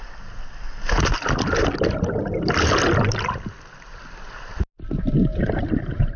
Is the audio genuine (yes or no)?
yes